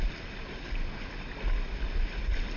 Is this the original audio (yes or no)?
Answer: yes